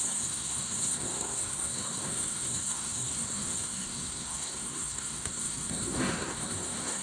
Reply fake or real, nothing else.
fake